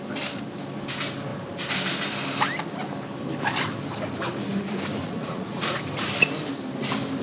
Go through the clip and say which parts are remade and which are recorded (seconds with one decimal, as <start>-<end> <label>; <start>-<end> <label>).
0.0-5.0 recorded; 5.0-5.8 remade; 5.8-7.2 recorded